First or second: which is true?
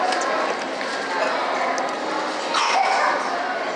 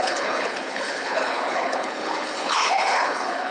first